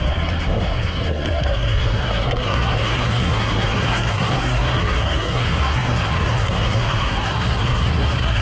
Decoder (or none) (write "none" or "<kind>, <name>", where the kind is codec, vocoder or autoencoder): codec, SNAC